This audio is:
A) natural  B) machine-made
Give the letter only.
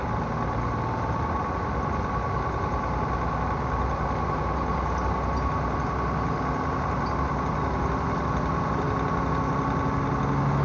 A